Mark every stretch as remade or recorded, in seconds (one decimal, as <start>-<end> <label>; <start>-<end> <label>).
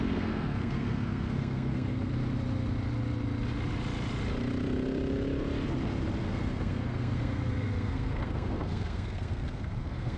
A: 0.0-2.1 remade; 2.1-6.2 recorded; 6.2-10.2 remade